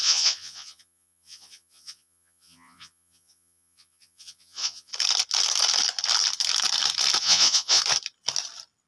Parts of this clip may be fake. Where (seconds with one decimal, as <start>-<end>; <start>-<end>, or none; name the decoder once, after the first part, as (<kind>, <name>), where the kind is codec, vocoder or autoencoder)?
0.0-4.9 (vocoder, Vocos); 7.2-7.8